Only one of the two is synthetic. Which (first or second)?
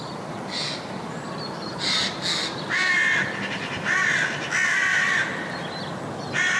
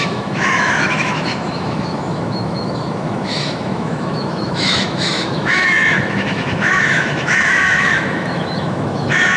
second